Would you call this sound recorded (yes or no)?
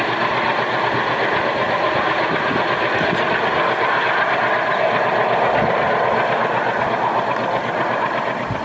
yes